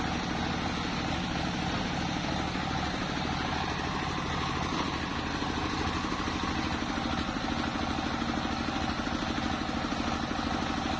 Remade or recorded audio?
recorded